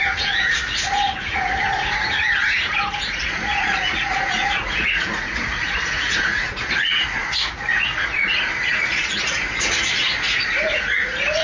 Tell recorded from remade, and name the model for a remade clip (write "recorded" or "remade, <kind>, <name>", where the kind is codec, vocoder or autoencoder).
remade, vocoder, Vocos